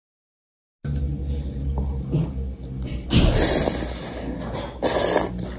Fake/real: real